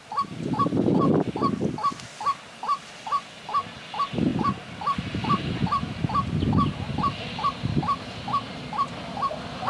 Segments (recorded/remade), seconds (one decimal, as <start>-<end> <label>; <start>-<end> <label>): 0.0-9.7 recorded